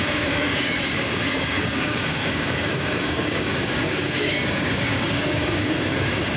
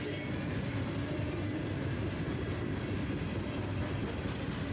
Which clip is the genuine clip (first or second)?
second